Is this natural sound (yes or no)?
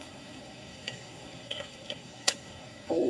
no